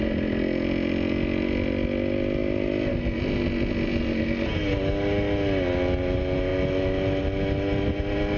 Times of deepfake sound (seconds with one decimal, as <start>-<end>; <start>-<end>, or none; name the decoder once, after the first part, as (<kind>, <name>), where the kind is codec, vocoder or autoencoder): none